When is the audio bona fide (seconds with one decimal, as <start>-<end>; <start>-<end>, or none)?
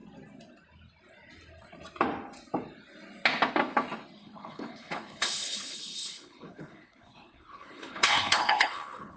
0.0-4.2